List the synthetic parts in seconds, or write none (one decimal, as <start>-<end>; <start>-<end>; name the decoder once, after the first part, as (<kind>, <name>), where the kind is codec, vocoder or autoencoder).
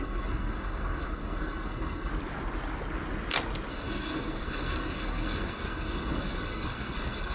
0.0-2.1 (codec, SNAC); 3.7-7.3